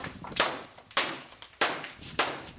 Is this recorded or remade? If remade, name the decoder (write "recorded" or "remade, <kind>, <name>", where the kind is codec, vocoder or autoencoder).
remade, vocoder, BigVGAN v2